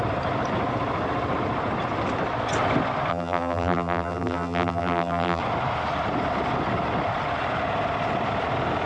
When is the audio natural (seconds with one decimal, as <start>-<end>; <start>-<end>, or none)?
0.0-3.1; 5.4-8.9